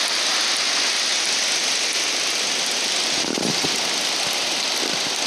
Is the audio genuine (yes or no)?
yes